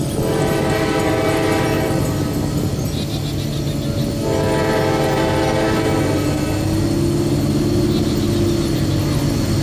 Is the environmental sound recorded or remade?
recorded